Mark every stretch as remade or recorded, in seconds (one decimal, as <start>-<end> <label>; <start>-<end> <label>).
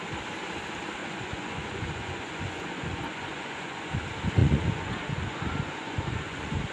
0.0-1.0 recorded; 1.0-3.9 remade; 3.9-4.4 recorded; 4.4-6.7 remade